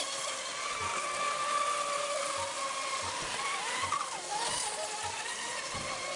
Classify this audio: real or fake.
real